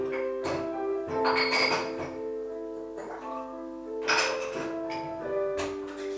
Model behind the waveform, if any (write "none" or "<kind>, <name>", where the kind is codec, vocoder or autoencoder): none